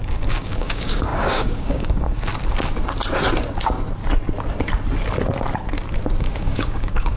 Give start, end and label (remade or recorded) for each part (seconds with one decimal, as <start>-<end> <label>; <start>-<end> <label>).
0.0-2.3 remade; 2.3-6.2 recorded; 6.2-7.2 remade